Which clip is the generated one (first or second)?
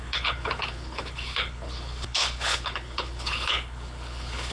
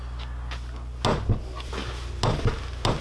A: first